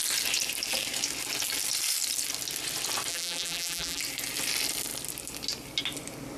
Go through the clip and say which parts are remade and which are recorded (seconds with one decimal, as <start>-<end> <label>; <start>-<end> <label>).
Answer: 0.0-3.1 recorded; 3.1-4.0 remade; 4.0-6.4 recorded